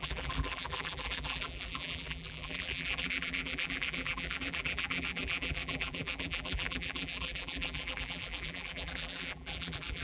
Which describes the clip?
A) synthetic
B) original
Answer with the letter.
A